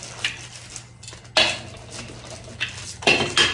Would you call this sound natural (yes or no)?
yes